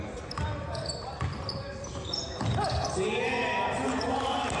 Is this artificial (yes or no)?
no